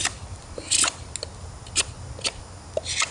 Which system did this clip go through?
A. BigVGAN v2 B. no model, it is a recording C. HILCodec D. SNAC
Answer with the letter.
B